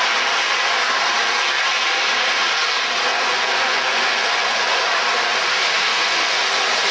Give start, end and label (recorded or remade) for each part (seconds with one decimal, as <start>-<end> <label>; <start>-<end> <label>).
0.0-3.1 recorded; 3.1-4.8 remade; 4.8-5.9 recorded; 5.9-6.5 remade; 6.5-6.9 recorded